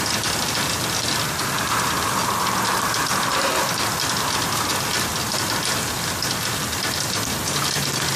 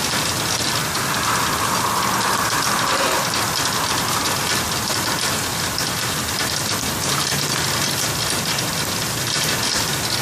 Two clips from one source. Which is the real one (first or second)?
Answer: first